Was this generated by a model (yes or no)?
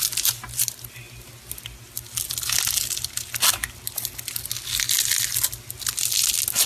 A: no